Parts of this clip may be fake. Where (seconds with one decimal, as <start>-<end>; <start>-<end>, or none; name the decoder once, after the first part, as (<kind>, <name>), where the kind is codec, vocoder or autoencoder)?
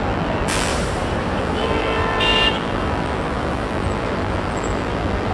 0.0-0.7 (vocoder, BigVGAN v2); 1.4-5.3